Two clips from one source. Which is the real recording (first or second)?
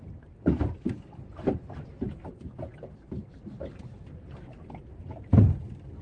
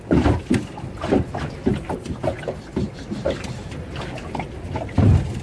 second